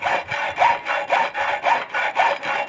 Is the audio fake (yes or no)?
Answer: no